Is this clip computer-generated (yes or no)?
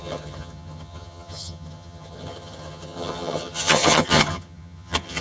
yes